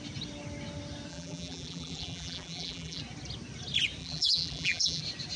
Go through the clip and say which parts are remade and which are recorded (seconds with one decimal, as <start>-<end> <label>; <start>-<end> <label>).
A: 0.0-1.1 recorded; 1.1-3.0 remade; 3.0-4.0 recorded; 4.0-5.0 remade; 5.0-5.4 recorded